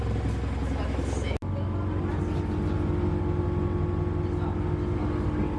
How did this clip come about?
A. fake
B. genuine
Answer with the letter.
B